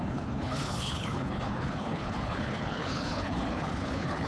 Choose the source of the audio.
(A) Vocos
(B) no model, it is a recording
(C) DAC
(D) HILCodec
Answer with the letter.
D